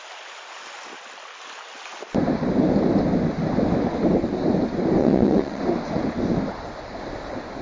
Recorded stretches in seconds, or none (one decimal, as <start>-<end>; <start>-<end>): 0.0-5.0; 5.6-7.6